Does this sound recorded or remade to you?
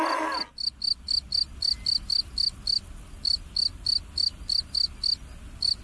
recorded